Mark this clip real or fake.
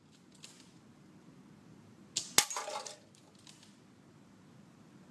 real